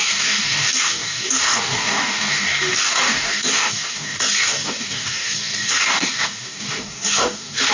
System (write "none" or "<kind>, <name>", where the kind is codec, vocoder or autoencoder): codec, DAC